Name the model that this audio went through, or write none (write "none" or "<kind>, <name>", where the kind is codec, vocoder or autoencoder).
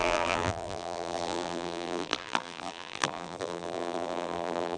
vocoder, BigVGAN v2